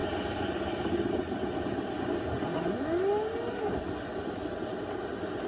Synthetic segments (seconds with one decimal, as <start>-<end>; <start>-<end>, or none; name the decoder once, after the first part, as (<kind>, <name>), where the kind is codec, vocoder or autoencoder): none